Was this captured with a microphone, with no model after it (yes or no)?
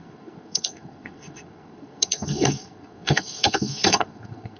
no